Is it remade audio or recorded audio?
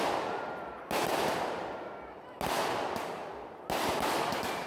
recorded